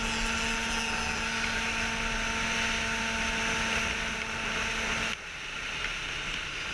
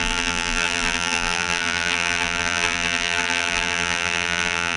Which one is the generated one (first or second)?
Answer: second